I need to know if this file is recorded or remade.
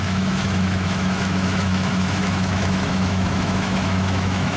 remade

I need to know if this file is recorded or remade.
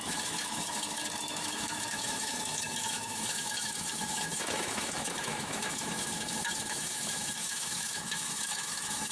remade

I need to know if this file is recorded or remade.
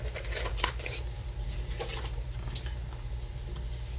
recorded